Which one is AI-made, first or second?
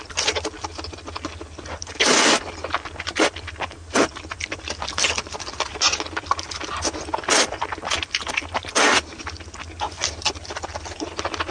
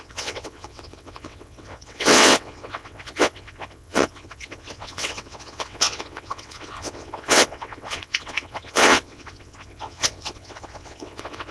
second